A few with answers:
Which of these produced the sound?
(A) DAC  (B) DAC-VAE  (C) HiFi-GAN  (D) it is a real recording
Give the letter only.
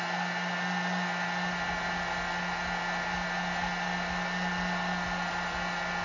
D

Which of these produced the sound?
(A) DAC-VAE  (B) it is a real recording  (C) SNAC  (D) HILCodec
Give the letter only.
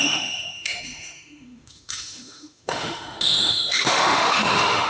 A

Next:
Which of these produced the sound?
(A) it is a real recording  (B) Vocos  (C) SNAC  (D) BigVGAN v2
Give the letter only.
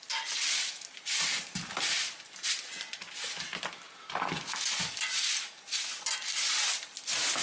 A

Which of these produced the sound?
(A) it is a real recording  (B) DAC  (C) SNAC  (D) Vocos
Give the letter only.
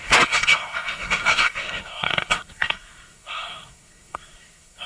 C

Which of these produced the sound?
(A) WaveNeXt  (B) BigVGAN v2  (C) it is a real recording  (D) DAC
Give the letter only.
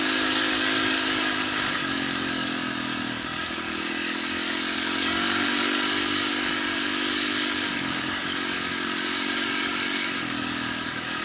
D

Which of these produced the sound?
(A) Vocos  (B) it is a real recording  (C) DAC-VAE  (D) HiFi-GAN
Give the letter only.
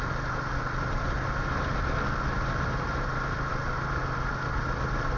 B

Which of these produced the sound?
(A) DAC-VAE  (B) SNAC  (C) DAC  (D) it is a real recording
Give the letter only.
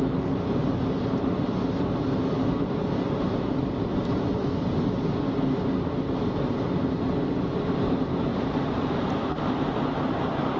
D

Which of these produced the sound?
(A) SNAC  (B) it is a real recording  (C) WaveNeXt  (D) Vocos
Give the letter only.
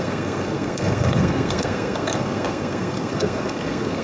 A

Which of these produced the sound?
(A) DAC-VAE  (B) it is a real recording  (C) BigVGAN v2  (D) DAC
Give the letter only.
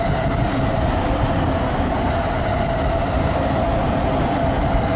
B